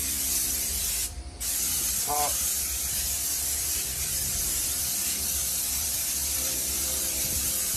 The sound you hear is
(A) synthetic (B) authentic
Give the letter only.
A